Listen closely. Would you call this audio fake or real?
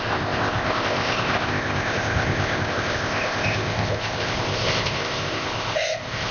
fake